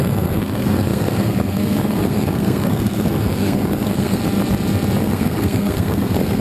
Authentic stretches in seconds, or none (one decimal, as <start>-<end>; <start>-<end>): 4.2-5.0